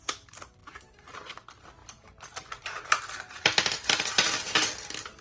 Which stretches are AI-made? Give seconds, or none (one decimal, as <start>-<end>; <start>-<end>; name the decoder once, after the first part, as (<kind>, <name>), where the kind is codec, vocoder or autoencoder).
0.6-1.3 (vocoder, BigVGAN v2); 1.8-5.2